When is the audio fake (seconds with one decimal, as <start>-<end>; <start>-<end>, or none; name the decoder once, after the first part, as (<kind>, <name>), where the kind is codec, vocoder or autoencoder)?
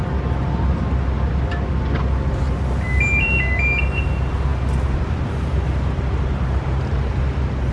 none